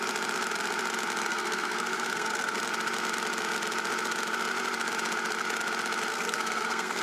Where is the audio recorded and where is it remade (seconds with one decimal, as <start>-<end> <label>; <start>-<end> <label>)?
0.0-1.3 recorded; 1.3-2.6 remade; 2.6-6.1 recorded; 6.1-7.0 remade